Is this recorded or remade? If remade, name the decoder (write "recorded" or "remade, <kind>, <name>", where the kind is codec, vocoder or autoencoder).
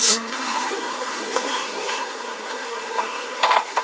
remade, codec, SNAC